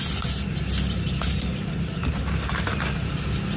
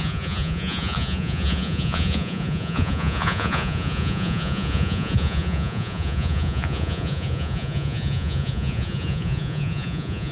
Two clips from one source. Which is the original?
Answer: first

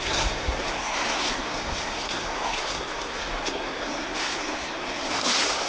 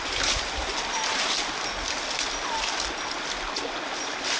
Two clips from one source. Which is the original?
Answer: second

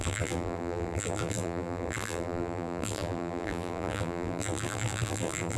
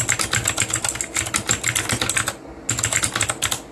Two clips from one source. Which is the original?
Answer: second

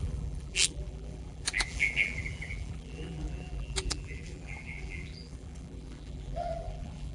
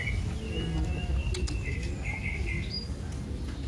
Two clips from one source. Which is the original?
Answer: second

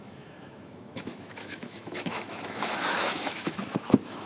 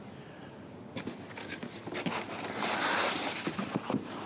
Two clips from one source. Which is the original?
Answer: second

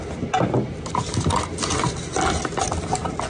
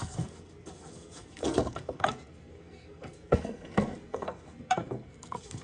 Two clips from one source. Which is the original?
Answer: first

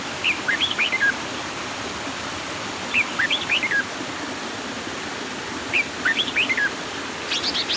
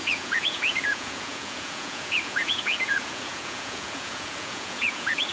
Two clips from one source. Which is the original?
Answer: first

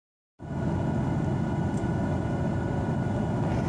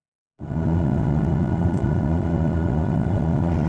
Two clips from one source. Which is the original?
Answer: first